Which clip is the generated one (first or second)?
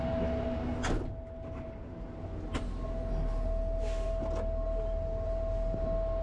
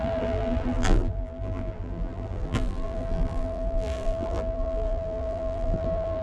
second